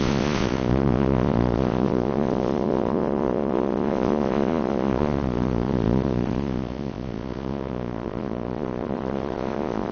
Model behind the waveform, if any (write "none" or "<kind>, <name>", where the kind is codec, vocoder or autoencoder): vocoder, Vocos